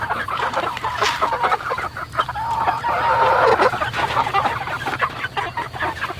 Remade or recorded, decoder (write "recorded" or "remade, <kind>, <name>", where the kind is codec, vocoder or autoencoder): recorded